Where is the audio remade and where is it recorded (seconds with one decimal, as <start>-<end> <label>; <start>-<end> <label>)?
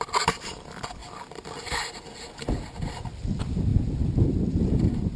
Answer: 0.0-5.2 recorded